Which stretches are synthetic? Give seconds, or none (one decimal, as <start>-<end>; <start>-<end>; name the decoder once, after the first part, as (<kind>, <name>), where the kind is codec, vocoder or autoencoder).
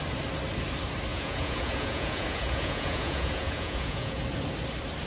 1.1-4.2 (vocoder, Vocos)